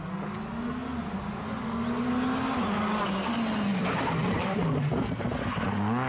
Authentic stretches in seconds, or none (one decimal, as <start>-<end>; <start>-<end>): 0.0-3.7; 4.9-6.1